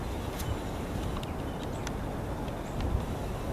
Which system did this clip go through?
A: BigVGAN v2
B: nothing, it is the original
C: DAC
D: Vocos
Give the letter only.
B